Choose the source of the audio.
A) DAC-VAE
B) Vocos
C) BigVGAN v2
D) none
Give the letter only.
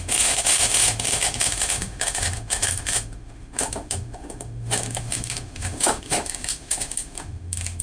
A